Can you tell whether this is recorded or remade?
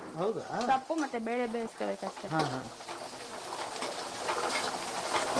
recorded